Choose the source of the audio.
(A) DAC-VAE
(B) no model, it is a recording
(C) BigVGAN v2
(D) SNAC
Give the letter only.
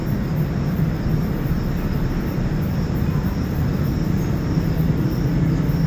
B